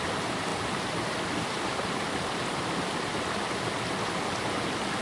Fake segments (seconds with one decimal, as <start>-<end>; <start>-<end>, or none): 0.5-3.5